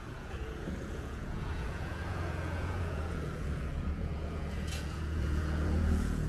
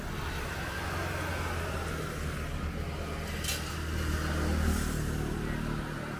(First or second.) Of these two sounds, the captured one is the second